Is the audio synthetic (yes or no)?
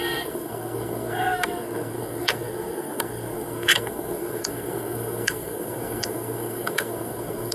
yes